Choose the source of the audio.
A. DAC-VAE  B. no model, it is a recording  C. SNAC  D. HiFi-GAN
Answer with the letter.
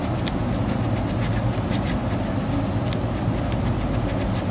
B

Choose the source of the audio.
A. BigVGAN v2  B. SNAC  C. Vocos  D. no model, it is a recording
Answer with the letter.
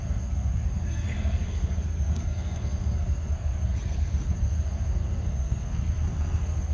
B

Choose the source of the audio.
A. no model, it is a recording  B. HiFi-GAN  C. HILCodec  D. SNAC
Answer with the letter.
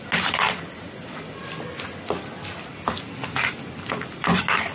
A